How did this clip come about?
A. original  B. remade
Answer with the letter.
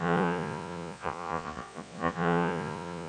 B